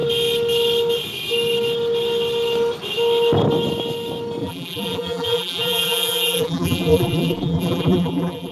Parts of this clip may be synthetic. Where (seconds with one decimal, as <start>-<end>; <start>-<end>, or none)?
4.4-8.5

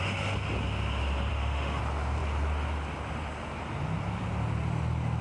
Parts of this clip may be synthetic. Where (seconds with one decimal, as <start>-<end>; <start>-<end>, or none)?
1.3-1.8

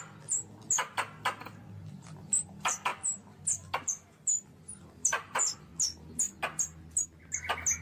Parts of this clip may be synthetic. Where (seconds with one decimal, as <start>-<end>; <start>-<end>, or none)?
0.0-5.7

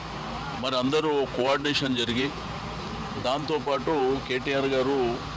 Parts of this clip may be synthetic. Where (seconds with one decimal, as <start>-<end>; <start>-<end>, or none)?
1.3-2.5; 3.4-4.0